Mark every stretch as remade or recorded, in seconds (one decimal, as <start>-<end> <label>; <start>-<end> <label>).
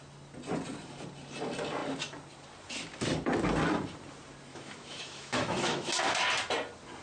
0.0-4.5 recorded; 4.5-5.9 remade; 5.9-7.0 recorded